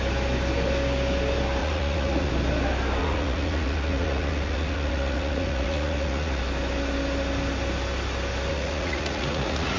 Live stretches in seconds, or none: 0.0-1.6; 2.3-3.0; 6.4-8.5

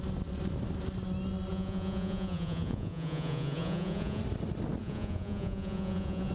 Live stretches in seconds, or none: 0.0-1.5; 4.2-4.8

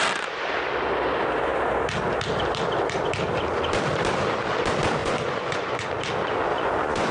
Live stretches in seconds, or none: 0.0-5.0; 5.9-6.5

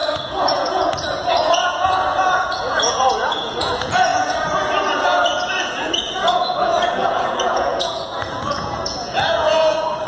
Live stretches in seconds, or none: none

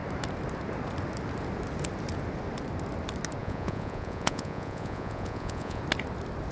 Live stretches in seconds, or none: 0.0-3.4; 5.8-6.5

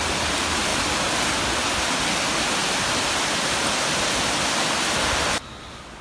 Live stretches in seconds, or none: 0.0-6.0

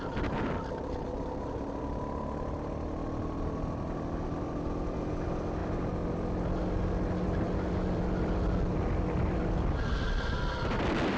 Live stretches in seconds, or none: 0.0-11.2